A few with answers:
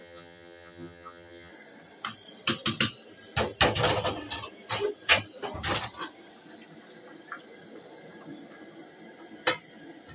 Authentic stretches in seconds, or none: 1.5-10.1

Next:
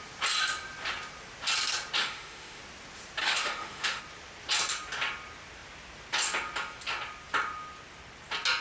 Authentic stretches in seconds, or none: 0.0-2.0; 2.6-3.2; 4.0-8.6